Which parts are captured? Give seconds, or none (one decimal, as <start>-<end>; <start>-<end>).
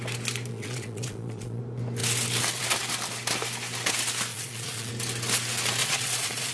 0.0-0.5; 1.6-4.3; 4.9-5.8